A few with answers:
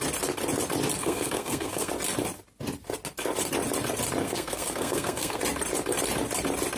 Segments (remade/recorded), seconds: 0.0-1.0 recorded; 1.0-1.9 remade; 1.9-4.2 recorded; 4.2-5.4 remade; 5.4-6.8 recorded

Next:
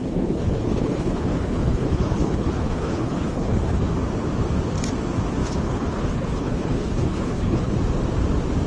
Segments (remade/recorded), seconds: 0.0-3.9 remade; 3.9-5.4 recorded; 5.4-7.7 remade; 7.7-8.7 recorded

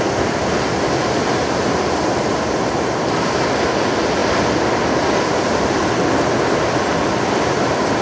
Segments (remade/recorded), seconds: 0.0-8.0 recorded

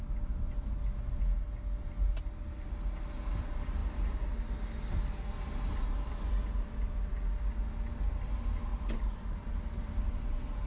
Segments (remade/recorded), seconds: 0.0-3.8 recorded; 3.8-4.4 remade; 4.4-8.7 recorded; 8.7-9.9 remade; 9.9-10.7 recorded